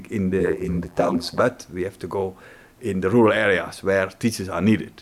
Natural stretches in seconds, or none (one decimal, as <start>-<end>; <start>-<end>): 0.0-0.4; 1.4-5.0